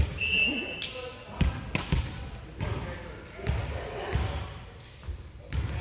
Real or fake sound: real